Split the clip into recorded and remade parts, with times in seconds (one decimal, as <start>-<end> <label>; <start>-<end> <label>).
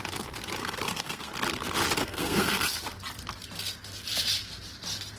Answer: 0.0-0.6 recorded; 0.6-1.3 remade; 1.3-2.0 recorded; 2.0-2.6 remade; 2.6-5.2 recorded